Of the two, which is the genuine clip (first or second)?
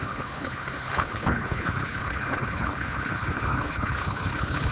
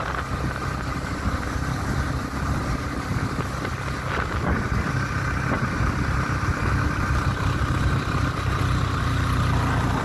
second